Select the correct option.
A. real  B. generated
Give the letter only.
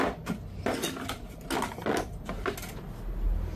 A